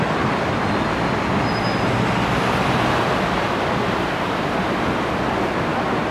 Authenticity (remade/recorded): recorded